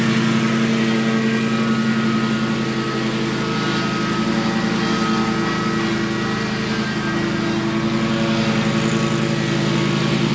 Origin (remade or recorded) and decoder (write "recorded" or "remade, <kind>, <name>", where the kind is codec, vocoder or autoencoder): recorded